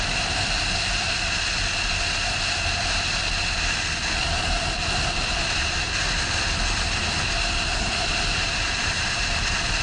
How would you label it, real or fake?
fake